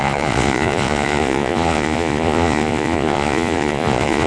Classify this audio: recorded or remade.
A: remade